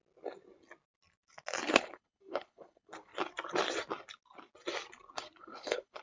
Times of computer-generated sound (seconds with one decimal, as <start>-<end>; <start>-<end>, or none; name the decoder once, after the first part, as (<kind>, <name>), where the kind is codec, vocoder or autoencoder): 1.7-3.1 (codec, HILCodec); 5.4-6.0